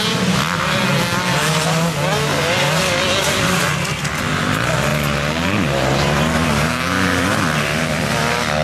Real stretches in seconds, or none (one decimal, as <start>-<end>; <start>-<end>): 0.0-8.6